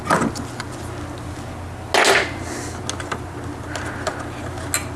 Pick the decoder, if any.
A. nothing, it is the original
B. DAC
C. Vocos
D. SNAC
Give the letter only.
A